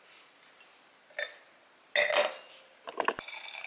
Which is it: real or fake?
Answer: real